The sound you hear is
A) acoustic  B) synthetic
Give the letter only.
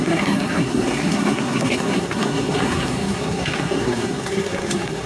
B